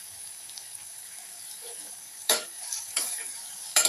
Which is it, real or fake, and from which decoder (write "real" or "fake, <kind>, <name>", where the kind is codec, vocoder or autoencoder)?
fake, codec, DAC